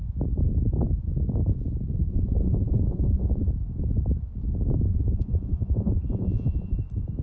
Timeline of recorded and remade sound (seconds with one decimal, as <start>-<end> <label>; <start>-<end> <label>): 0.0-2.1 recorded; 2.1-3.5 remade; 3.5-4.9 recorded; 4.9-6.8 remade; 6.8-7.2 recorded